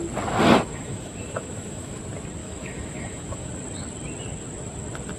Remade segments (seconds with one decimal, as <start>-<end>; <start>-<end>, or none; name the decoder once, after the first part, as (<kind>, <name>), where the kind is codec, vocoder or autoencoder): 0.7-2.0 (autoencoder, DAC-VAE); 2.4-3.5